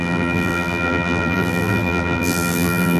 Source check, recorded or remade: remade